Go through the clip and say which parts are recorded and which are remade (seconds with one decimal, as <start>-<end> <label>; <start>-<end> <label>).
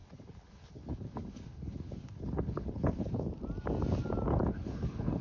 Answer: 0.0-3.1 remade; 3.1-4.3 recorded; 4.3-5.2 remade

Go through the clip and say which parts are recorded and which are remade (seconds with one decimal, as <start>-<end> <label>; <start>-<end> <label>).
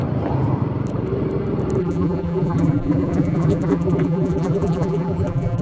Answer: 0.0-1.8 recorded; 1.8-5.6 remade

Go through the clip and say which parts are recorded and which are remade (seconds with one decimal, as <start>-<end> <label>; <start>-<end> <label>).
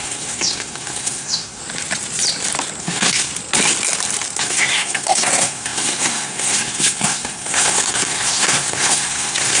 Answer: 0.0-1.6 remade; 1.6-2.8 recorded; 2.8-3.3 remade; 3.3-4.4 recorded; 4.4-9.6 remade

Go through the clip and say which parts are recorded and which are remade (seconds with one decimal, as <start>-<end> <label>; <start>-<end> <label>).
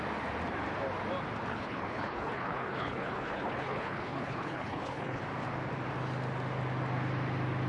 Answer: 0.0-1.5 recorded; 1.5-5.2 remade; 5.2-7.7 recorded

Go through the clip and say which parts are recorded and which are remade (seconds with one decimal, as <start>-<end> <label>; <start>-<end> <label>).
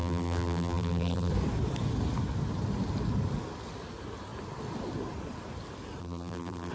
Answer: 0.0-1.3 remade; 1.3-6.0 recorded; 6.0-6.7 remade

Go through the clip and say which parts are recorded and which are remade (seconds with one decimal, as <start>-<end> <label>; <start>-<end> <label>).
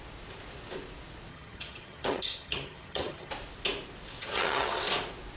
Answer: 0.0-1.3 recorded; 1.3-3.3 remade; 3.3-4.2 recorded; 4.2-4.8 remade; 4.8-5.4 recorded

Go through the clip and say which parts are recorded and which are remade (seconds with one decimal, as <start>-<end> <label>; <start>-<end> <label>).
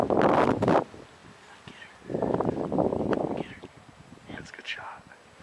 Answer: 0.0-5.4 recorded